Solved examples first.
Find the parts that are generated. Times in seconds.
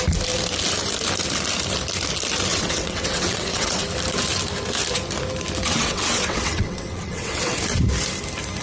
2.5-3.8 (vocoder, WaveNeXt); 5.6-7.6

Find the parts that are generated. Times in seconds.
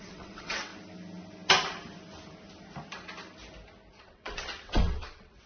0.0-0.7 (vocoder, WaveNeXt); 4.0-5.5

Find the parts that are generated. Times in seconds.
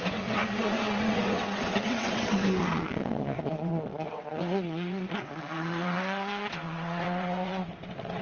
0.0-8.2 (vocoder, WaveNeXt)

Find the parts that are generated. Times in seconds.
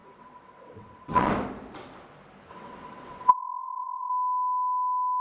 0.0-1.3 (vocoder, WaveNeXt); 2.5-4.1